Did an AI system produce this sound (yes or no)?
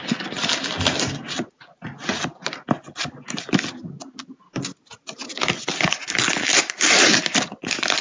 no